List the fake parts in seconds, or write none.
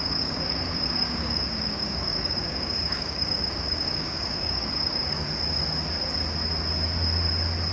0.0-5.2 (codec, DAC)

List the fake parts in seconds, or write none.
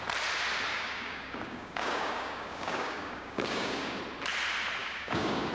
0.7-4.0 (codec, DAC); 4.8-5.5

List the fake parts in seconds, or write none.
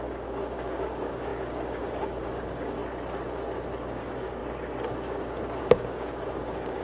0.0-2.8 (codec, DAC); 3.9-4.4; 5.6-6.8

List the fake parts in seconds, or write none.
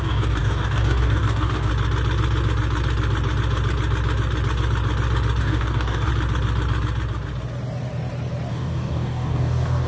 0.0-1.7 (codec, DAC); 5.4-6.1; 8.5-9.9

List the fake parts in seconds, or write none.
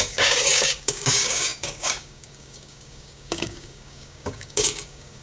0.0-5.2 (codec, DAC)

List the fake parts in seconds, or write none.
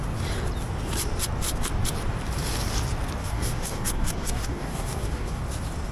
3.2-5.4 (codec, DAC)